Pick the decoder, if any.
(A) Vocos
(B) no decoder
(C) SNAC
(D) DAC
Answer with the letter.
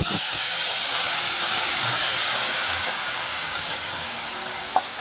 D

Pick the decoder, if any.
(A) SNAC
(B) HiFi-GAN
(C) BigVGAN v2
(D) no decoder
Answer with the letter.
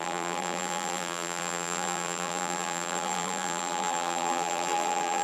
C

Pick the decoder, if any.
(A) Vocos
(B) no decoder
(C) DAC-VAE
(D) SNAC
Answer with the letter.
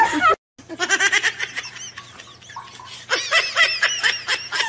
B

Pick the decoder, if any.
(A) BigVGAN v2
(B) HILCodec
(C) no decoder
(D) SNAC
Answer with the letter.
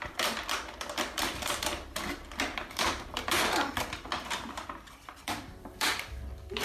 A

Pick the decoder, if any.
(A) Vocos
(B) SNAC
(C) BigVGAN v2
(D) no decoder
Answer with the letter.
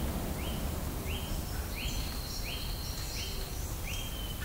D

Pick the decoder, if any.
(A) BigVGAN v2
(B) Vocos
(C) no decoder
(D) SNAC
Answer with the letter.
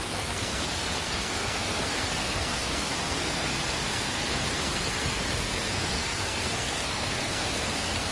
D